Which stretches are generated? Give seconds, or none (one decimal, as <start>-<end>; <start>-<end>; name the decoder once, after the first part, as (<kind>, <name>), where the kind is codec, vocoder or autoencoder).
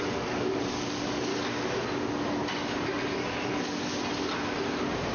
0.0-1.3 (codec, DAC); 3.5-3.9